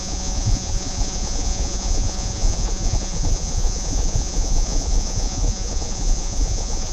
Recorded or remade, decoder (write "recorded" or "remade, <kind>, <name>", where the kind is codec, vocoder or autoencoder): remade, vocoder, Vocos